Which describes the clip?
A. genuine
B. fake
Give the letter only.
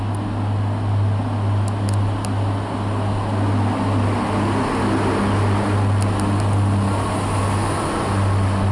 A